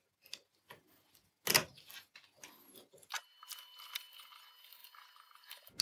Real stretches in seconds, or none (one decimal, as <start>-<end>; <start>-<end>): 0.0-5.8